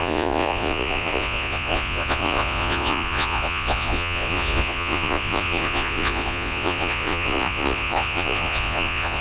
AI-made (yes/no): yes